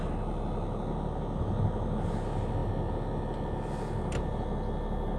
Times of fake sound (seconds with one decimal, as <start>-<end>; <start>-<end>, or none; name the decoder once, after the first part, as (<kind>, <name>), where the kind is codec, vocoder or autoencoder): none